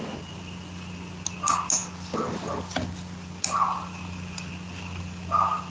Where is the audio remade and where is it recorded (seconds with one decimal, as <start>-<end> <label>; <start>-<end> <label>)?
0.0-5.7 recorded